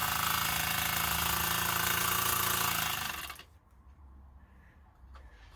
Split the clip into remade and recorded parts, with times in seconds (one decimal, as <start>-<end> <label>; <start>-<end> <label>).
0.0-5.6 recorded